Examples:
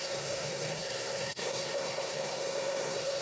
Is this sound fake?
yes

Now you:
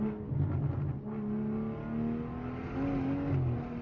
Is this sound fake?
no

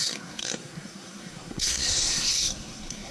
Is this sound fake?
yes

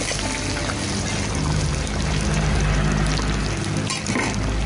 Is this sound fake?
no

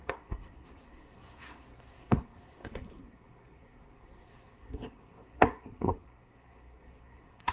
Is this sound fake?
yes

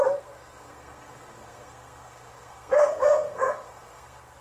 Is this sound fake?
yes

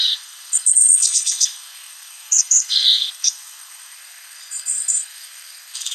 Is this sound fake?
yes